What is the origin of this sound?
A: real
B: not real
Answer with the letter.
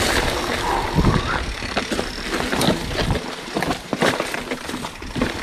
A